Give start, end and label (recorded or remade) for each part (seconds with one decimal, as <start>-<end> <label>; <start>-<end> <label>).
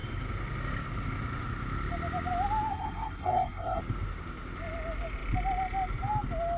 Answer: 0.0-2.7 recorded; 2.7-3.8 remade; 3.8-6.6 recorded